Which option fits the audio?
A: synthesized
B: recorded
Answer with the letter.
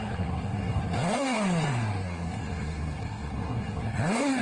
A